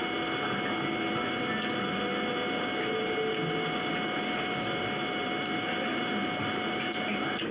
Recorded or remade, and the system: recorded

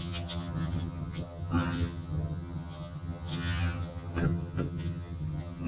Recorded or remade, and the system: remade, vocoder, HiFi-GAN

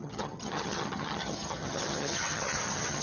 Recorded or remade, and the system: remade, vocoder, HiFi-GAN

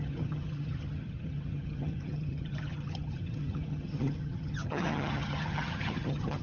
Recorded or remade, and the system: remade, vocoder, HiFi-GAN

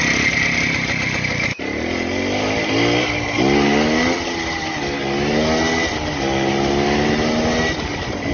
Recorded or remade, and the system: recorded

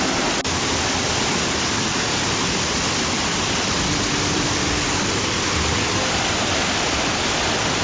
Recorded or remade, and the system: recorded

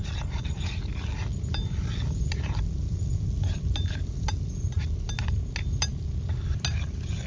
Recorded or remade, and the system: recorded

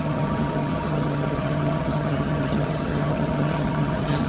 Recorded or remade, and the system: remade, vocoder, HiFi-GAN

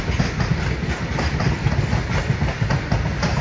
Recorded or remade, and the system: recorded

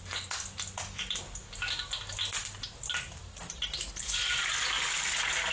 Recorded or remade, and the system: recorded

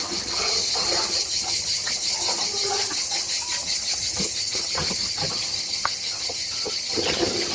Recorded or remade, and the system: remade, vocoder, HiFi-GAN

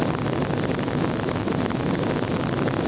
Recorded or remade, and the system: recorded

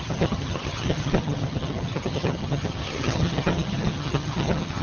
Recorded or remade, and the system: remade, vocoder, HiFi-GAN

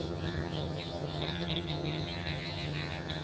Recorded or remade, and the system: remade, vocoder, HiFi-GAN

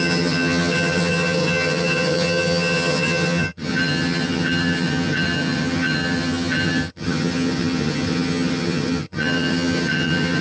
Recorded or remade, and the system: remade, vocoder, HiFi-GAN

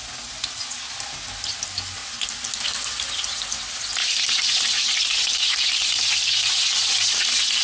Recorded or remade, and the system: recorded